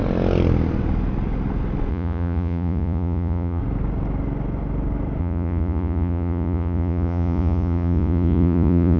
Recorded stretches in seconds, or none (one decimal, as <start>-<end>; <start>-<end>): 0.0-1.9; 3.6-5.2